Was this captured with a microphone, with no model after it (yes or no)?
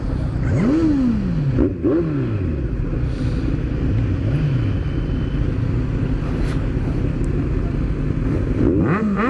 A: yes